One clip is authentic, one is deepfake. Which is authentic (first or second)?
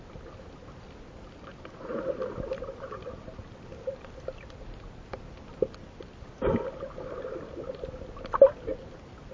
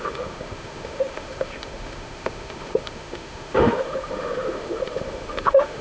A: first